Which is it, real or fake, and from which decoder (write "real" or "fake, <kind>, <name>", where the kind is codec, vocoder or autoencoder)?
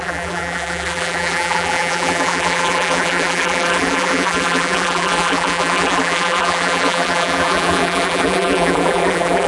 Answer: fake, vocoder, BigVGAN v2